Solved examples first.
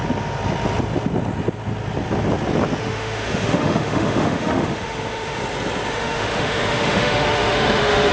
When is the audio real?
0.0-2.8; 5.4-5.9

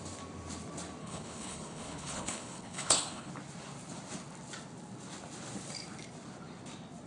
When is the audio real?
0.0-1.0; 3.3-7.1

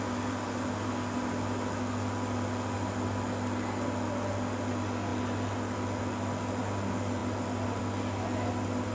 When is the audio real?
0.0-8.9